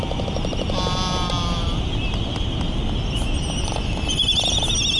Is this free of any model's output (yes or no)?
yes